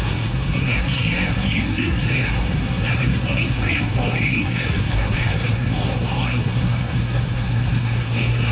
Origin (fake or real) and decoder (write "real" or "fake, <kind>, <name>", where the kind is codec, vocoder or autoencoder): fake, codec, SNAC